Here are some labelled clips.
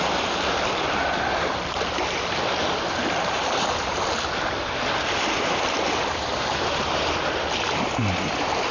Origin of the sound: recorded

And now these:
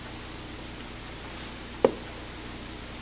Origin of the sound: recorded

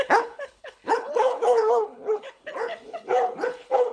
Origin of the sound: remade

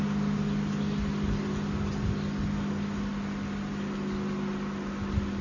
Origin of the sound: recorded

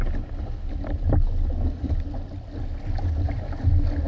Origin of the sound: recorded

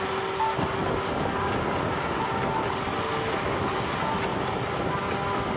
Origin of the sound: recorded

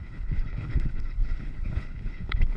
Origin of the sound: remade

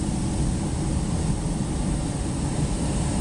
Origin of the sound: recorded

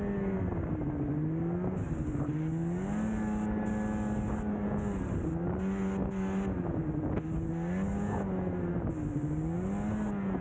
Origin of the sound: recorded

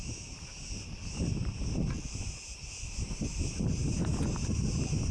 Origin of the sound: recorded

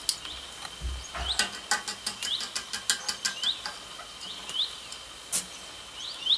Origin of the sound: recorded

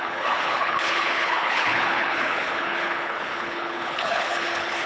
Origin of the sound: remade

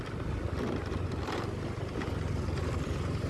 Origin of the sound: recorded